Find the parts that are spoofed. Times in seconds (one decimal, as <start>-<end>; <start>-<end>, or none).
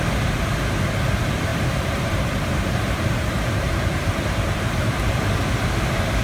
1.5-5.2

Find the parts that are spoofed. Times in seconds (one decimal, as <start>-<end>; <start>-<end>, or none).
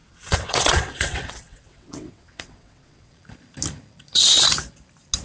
0.0-3.1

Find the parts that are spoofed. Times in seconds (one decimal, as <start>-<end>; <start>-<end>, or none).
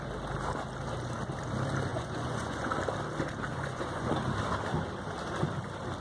1.9-2.7; 3.5-4.1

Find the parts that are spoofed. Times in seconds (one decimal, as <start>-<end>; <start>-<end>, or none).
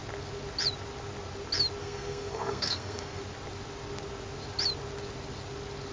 1.8-3.2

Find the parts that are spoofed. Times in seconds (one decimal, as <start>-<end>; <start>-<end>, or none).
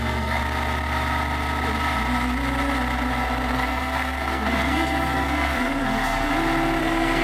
0.0-0.4; 3.5-6.3; 6.8-7.2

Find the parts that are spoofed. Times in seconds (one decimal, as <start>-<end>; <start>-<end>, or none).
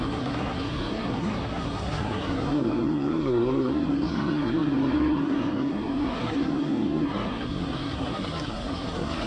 0.0-9.3